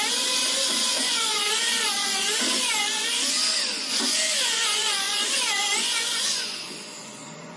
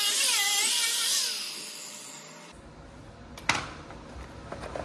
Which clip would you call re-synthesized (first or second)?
first